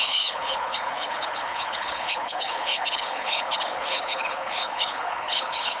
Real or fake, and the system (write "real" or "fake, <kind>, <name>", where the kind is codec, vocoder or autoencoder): fake, codec, HILCodec